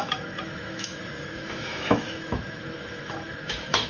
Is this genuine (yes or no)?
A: no